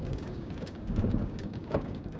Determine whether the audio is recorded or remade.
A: remade